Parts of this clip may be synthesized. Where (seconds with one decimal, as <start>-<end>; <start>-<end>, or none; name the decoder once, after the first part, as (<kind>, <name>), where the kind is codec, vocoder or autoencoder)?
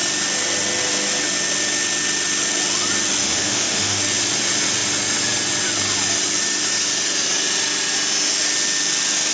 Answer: 3.2-4.0 (autoencoder, DAC-VAE)